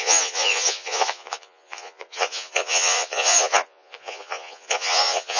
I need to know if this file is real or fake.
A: fake